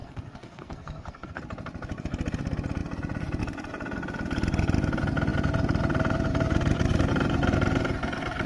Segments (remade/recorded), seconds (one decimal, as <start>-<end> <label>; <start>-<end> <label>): 0.0-1.4 remade; 1.4-8.5 recorded